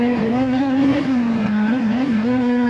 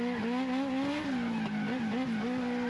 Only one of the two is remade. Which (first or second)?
first